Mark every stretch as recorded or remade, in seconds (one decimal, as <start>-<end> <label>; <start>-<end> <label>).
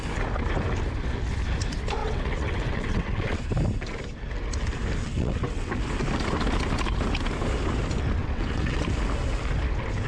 0.0-2.0 recorded; 2.0-3.4 remade; 3.4-5.0 recorded; 5.0-5.7 remade; 5.7-8.2 recorded; 8.2-8.8 remade; 8.8-10.1 recorded